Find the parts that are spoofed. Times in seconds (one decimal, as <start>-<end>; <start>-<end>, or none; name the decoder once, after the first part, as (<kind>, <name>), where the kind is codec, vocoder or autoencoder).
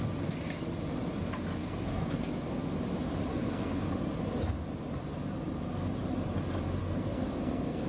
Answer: 1.6-2.3 (codec, SNAC); 3.3-3.9; 6.8-7.9